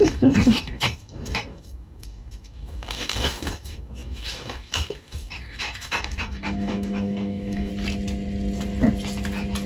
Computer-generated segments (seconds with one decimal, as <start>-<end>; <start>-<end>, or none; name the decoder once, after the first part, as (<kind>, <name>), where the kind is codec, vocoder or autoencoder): 0.0-7.7 (codec, DAC)